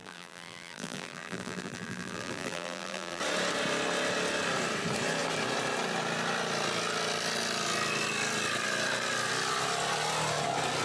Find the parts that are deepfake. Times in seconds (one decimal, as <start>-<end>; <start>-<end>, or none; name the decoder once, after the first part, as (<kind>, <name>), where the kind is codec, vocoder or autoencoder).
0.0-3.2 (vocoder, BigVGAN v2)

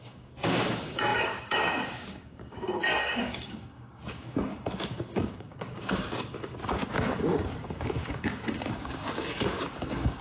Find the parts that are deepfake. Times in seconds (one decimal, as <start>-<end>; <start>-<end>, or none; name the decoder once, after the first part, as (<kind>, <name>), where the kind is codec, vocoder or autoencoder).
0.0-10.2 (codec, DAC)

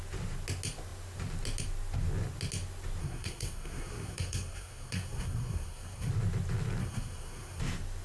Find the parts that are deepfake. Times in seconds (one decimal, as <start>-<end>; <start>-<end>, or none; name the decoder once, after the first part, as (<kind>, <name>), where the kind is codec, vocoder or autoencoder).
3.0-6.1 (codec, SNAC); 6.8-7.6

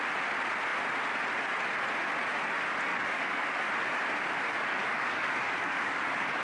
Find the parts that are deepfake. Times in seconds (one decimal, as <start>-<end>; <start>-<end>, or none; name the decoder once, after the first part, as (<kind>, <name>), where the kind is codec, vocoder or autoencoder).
2.9-3.7 (codec, DAC); 4.7-6.4

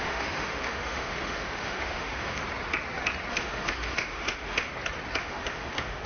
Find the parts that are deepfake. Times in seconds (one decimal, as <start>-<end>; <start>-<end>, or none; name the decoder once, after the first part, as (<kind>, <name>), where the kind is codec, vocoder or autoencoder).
0.0-2.4 (autoencoder, DAC-VAE); 3.3-4.7; 5.2-6.1

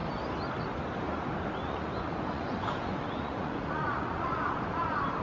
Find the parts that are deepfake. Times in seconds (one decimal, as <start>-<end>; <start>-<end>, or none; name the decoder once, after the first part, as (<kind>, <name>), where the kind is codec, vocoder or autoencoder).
1.6-4.7 (vocoder, Vocos)

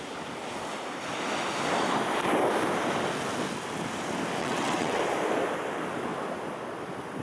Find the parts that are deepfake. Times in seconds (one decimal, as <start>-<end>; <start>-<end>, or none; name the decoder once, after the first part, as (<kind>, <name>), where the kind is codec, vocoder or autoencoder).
4.4-5.0 (vocoder, WaveNeXt)

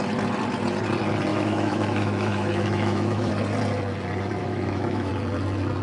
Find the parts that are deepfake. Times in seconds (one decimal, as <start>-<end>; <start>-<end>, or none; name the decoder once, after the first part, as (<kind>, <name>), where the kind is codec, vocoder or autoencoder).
1.3-3.3 (autoencoder, DAC-VAE); 4.4-5.1